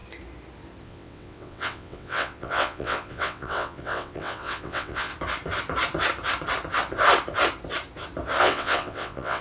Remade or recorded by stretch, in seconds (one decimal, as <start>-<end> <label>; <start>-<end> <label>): 0.0-0.8 recorded; 0.8-5.1 remade; 5.1-8.4 recorded; 8.4-9.4 remade